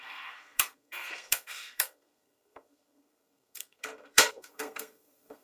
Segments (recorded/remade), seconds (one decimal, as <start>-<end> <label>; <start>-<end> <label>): 0.0-5.4 remade